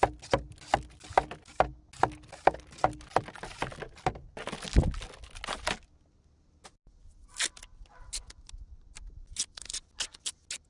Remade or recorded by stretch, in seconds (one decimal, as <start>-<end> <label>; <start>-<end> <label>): 0.0-10.7 recorded

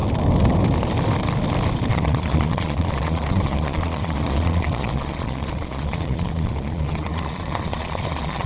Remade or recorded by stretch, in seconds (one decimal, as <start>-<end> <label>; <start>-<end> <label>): 0.0-1.9 recorded; 1.9-8.5 remade

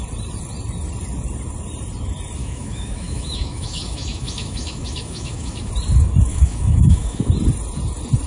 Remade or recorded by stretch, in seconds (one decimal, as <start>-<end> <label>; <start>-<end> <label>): 0.0-2.4 recorded; 2.4-5.7 remade; 5.7-6.3 recorded; 6.3-7.3 remade; 7.3-8.3 recorded

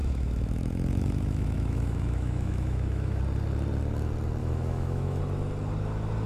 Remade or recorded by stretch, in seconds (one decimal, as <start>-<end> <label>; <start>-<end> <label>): 0.0-3.2 remade; 3.2-4.4 recorded; 4.4-5.2 remade; 5.2-6.3 recorded